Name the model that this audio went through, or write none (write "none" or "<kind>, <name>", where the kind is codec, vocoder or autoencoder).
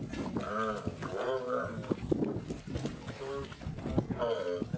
none